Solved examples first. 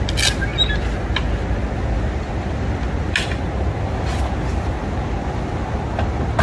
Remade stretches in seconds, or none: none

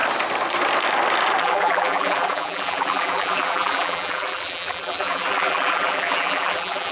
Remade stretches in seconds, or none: 1.4-6.9 (vocoder, BigVGAN v2)